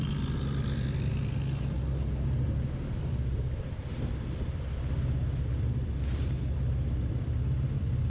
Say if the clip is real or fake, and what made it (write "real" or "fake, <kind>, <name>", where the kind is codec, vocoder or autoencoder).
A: fake, vocoder, BigVGAN v2